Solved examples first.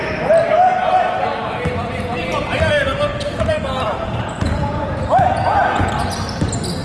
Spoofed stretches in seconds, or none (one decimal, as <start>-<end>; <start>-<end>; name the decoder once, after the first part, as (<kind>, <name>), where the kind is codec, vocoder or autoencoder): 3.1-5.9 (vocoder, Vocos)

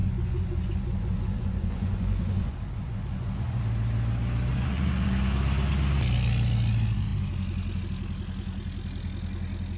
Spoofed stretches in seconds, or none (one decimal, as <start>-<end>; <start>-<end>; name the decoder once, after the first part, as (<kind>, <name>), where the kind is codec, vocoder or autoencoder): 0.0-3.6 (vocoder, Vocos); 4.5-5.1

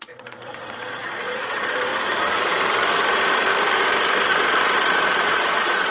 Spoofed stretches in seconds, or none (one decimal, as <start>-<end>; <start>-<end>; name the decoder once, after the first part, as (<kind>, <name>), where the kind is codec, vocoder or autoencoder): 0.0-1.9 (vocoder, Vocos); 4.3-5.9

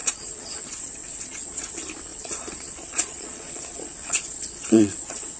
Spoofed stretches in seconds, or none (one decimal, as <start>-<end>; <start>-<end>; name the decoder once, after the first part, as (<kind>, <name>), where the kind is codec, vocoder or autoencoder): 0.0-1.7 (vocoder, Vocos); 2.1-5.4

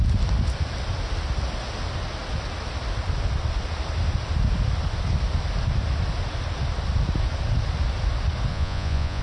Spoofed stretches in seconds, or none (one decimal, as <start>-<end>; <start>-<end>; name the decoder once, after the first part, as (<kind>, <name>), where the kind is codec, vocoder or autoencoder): 8.5-9.2 (vocoder, Vocos)

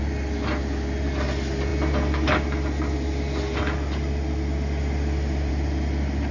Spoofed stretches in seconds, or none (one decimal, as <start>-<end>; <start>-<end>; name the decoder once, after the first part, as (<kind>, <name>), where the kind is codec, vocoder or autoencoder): none

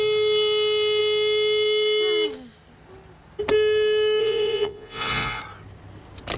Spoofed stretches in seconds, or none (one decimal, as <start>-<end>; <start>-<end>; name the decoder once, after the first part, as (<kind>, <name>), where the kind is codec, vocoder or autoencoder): 4.2-5.4 (vocoder, Vocos)

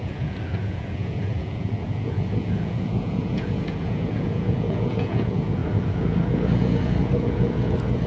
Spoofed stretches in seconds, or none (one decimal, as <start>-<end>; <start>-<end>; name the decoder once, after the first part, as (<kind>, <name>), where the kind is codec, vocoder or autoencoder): 0.0-8.1 (vocoder, Vocos)